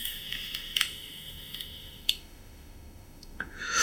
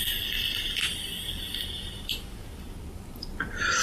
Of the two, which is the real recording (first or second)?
second